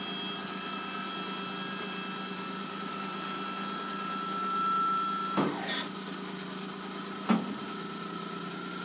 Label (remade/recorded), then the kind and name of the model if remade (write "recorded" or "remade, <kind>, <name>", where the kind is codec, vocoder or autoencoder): recorded